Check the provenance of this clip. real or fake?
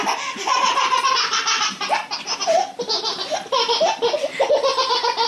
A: real